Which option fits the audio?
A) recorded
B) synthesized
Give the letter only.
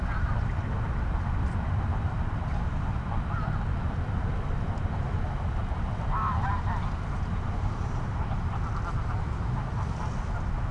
A